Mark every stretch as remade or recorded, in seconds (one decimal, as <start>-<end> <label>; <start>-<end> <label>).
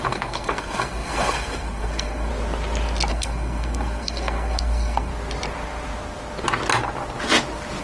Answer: 0.0-2.3 remade; 2.3-3.1 recorded; 3.1-5.1 remade; 5.1-7.8 recorded